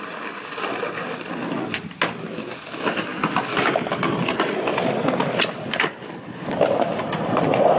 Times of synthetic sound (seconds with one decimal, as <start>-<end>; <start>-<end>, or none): none